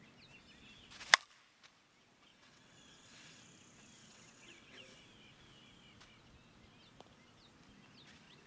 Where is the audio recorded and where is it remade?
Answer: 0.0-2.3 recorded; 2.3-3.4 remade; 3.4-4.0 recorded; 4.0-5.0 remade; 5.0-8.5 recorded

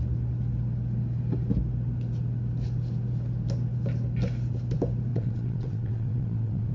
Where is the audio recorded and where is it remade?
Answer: 0.0-5.1 recorded; 5.1-6.7 remade

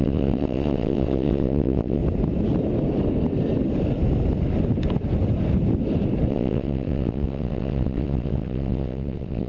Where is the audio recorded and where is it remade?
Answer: 0.0-2.0 remade; 2.0-6.3 recorded; 6.3-9.5 remade

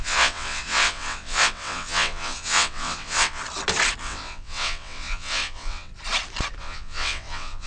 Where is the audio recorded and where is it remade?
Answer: 0.0-3.4 remade; 3.4-4.0 recorded; 4.0-5.9 remade; 5.9-6.6 recorded; 6.6-7.7 remade

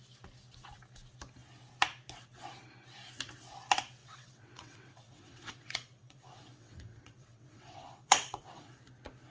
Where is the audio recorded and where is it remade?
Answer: 0.0-4.0 recorded; 4.0-8.8 remade; 8.8-9.3 recorded